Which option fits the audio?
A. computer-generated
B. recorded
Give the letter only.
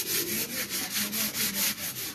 B